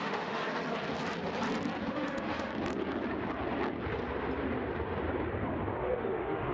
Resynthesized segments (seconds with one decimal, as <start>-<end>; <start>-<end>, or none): 0.0-0.4; 1.9-2.5; 5.8-6.5